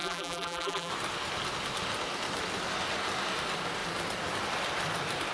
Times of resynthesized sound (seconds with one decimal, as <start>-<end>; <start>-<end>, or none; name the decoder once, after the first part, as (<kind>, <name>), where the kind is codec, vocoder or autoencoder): 0.0-0.9 (vocoder, BigVGAN v2)